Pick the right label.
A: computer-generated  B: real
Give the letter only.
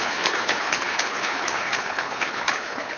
A